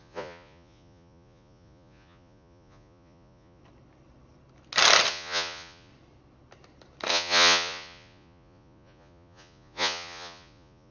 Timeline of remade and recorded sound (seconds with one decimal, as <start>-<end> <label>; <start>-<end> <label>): 0.0-3.6 remade; 3.6-5.1 recorded; 5.1-5.9 remade; 5.9-7.1 recorded; 7.1-10.9 remade